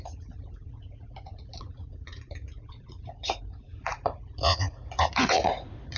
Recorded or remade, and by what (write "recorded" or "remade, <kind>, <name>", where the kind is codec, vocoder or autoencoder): remade, vocoder, Vocos